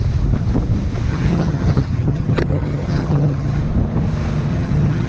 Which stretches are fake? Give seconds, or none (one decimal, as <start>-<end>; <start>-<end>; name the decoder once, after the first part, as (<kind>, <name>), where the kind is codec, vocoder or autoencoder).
1.1-3.6 (vocoder, HiFi-GAN); 4.5-5.1